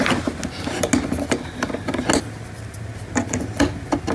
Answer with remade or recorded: recorded